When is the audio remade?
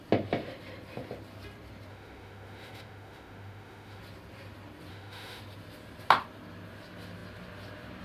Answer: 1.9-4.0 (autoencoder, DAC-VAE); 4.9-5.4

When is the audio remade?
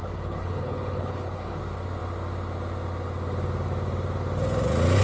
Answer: 0.0-1.6 (codec, HILCodec)